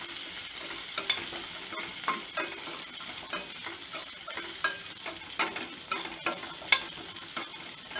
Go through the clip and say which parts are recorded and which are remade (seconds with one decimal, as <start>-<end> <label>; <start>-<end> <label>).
0.0-8.0 recorded